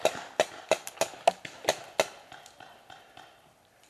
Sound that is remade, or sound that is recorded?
recorded